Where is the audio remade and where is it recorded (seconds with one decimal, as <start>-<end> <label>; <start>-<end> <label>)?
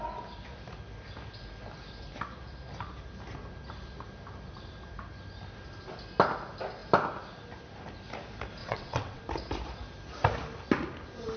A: 0.0-8.6 recorded; 8.6-9.2 remade; 9.2-11.4 recorded